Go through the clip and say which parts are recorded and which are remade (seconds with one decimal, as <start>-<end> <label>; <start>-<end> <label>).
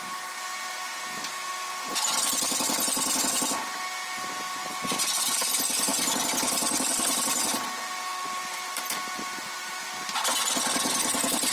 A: 0.0-11.5 recorded